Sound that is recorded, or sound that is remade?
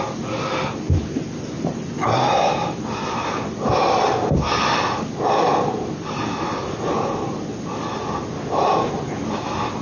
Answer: recorded